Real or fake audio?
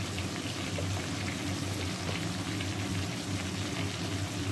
real